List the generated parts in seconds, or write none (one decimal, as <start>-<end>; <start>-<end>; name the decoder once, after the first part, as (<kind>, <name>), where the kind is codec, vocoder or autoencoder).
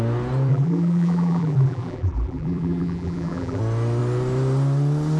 0.5-3.6 (vocoder, BigVGAN v2)